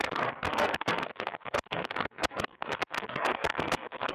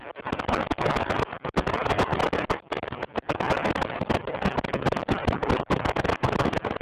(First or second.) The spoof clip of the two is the first